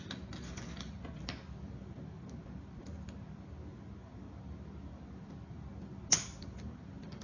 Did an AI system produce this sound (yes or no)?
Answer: no